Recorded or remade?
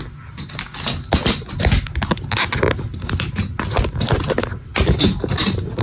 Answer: recorded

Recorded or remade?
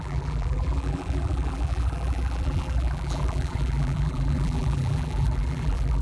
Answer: remade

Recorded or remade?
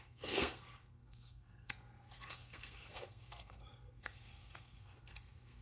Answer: remade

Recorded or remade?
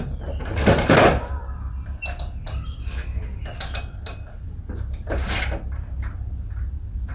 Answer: recorded